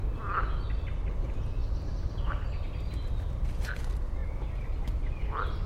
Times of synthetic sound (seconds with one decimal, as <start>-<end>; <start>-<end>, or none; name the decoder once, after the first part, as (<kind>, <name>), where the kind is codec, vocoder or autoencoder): 4.2-5.2 (vocoder, BigVGAN v2)